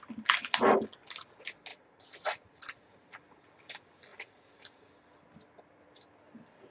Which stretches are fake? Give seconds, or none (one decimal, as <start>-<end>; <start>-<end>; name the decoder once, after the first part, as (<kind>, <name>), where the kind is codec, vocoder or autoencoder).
1.7-3.2 (vocoder, Vocos); 4.1-4.9

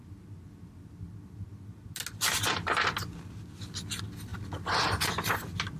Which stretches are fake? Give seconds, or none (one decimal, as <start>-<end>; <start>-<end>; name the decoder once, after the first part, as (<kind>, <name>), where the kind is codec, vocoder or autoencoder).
none

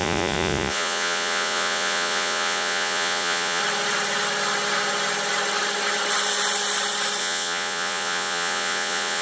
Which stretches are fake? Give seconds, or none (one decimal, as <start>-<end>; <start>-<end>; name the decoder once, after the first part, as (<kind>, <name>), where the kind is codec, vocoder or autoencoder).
0.0-3.6 (vocoder, Vocos); 7.2-9.2

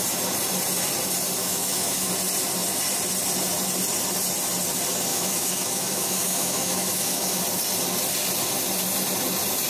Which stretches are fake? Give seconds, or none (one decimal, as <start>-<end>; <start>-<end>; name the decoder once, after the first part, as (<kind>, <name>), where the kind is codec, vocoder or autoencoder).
1.4-2.1 (autoencoder, DAC-VAE); 5.1-7.4

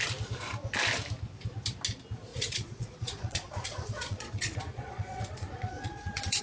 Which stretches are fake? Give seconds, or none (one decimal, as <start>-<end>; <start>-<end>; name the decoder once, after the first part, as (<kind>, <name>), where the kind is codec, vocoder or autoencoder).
2.3-6.4 (vocoder, Vocos)